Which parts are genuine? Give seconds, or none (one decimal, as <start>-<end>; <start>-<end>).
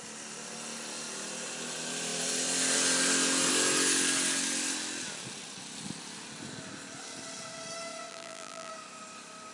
0.0-8.1; 8.7-9.5